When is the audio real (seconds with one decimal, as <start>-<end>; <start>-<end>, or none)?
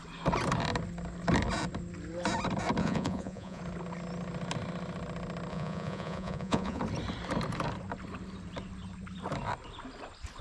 0.0-2.8; 3.6-5.5; 6.8-10.4